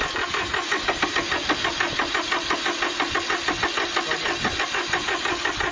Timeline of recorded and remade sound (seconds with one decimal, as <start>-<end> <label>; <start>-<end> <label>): 0.0-5.7 recorded